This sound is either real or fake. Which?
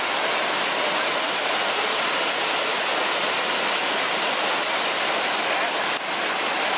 real